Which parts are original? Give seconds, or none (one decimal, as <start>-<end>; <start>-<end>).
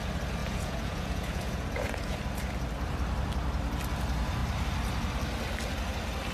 0.0-0.4; 2.2-6.3